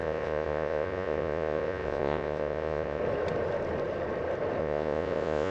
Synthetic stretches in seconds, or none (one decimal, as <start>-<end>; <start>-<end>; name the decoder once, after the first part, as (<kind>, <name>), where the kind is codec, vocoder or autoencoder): 0.0-3.0 (vocoder, Vocos); 4.6-5.5